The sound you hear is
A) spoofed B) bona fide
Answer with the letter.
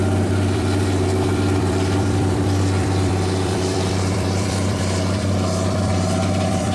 A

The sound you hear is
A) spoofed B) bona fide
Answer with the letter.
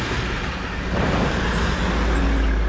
B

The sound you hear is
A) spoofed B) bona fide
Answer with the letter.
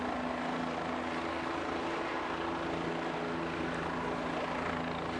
A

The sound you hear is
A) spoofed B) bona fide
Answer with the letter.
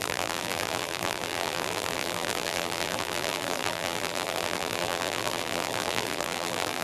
A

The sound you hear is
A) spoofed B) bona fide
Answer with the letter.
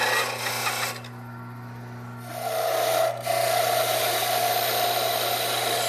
B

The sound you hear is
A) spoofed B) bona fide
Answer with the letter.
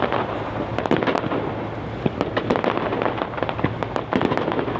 B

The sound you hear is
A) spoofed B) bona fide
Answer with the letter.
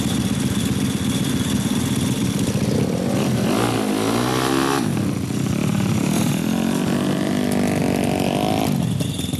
B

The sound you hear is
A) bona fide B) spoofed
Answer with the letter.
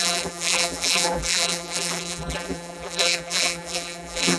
B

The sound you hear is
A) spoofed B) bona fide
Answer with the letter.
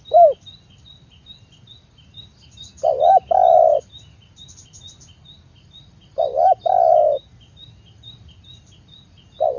B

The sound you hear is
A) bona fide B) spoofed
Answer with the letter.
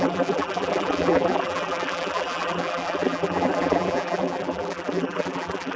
B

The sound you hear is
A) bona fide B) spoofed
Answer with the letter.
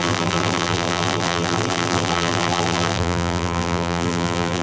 B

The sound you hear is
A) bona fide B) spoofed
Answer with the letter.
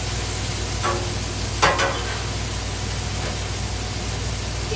A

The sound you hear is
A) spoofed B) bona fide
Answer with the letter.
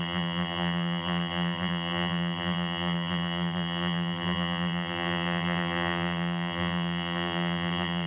A